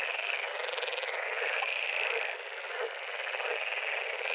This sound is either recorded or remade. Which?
recorded